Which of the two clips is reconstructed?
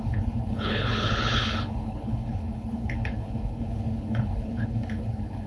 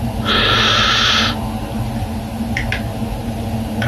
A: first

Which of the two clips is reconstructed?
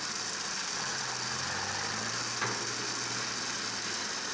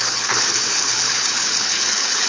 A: second